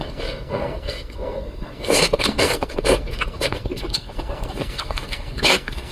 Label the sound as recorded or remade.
remade